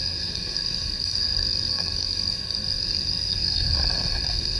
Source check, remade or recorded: remade